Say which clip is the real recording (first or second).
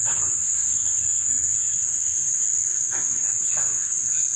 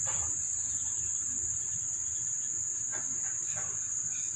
second